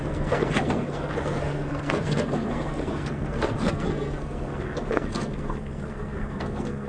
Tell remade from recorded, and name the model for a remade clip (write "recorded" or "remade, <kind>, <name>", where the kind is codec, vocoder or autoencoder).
remade, codec, SNAC